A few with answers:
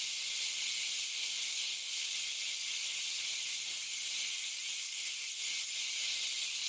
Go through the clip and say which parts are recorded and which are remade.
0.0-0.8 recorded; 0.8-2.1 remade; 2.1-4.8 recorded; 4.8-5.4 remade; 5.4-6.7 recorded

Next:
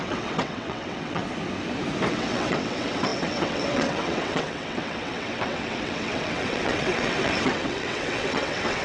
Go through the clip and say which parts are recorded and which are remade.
0.0-1.2 remade; 1.2-2.1 recorded; 2.1-8.8 remade